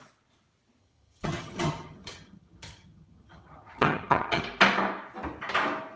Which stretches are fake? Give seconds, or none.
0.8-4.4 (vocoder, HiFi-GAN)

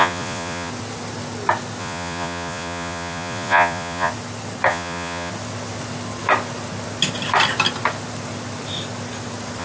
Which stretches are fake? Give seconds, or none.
0.0-0.7 (vocoder, Vocos); 1.8-4.1; 4.7-5.3

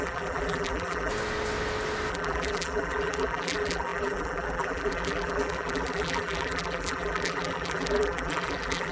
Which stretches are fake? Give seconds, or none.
0.0-1.1 (vocoder, BigVGAN v2); 2.1-8.9

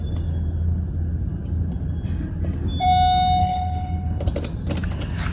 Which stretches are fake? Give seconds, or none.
3.4-4.2 (codec, HILCodec)

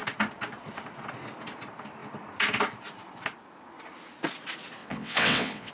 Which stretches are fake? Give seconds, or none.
4.8-5.7 (vocoder, WaveNeXt)

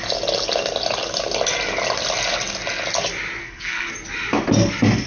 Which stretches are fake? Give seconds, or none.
3.4-3.9 (codec, SNAC)

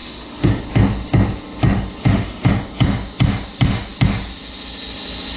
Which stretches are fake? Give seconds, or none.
0.0-0.6 (autoencoder, DAC-VAE); 2.0-2.5